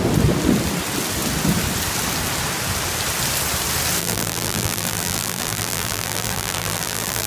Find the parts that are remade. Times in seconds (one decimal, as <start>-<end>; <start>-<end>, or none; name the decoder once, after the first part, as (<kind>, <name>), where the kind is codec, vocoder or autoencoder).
4.0-7.3 (vocoder, BigVGAN v2)